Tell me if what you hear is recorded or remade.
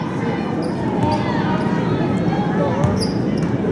recorded